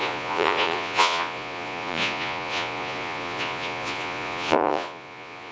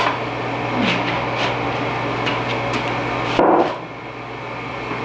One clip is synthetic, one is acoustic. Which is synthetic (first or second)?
first